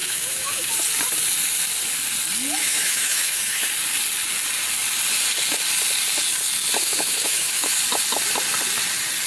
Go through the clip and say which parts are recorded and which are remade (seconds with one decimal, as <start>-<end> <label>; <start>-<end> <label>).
0.0-0.7 remade; 0.7-2.6 recorded; 2.6-3.7 remade; 3.7-6.8 recorded; 6.8-7.7 remade; 7.7-9.3 recorded